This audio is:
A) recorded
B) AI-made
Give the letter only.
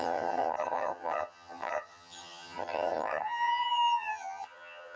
B